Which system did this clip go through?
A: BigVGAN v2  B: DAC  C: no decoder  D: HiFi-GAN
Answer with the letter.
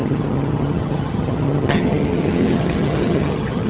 D